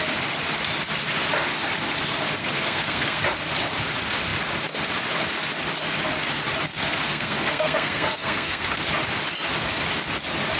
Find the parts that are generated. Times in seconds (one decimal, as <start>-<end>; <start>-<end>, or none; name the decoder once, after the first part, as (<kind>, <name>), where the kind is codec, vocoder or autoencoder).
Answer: 2.4-3.2 (codec, SNAC); 6.7-8.8